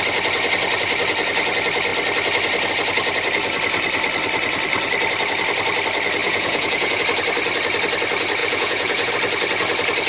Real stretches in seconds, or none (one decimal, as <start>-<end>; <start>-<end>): 0.0-6.2; 7.0-8.4; 9.1-10.1